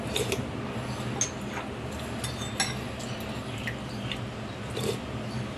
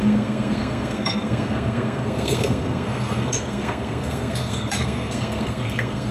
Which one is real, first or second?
first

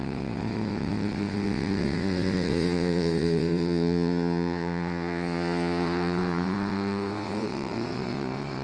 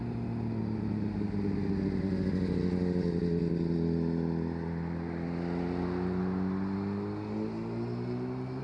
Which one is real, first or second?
second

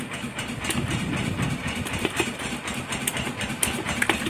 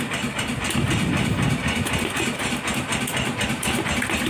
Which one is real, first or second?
second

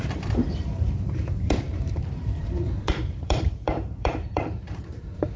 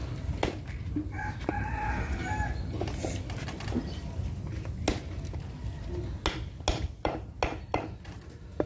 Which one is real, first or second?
second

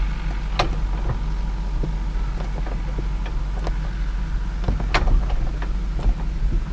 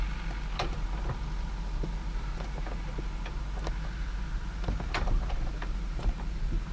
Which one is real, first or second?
first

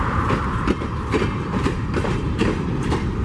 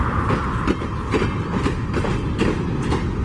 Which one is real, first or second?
second